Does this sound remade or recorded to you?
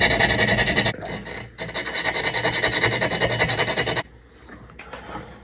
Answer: recorded